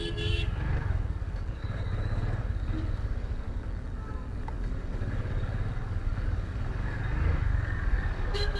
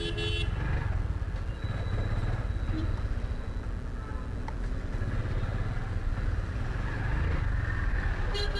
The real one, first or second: second